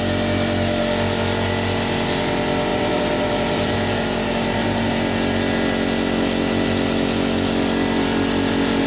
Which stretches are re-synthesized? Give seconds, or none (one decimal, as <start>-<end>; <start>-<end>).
2.7-4.9